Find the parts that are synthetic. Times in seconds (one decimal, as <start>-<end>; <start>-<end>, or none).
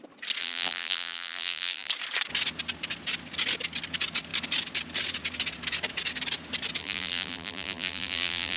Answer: 0.4-1.9; 6.8-8.6